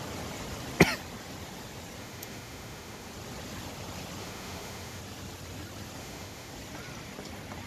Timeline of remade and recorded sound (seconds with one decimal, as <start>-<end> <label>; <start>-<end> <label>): 0.0-2.0 recorded; 2.0-3.1 remade; 3.1-4.2 recorded; 4.2-5.0 remade; 5.0-6.0 recorded; 6.0-6.5 remade; 6.5-7.7 recorded